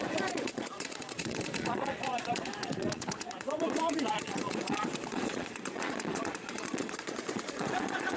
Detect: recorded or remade remade